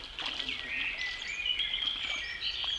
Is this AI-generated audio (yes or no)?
no